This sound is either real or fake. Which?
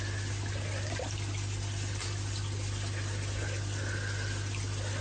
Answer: real